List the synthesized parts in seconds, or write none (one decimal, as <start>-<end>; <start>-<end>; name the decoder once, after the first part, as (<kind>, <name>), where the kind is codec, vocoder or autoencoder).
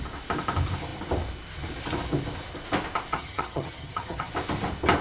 3.1-4.3 (vocoder, HiFi-GAN)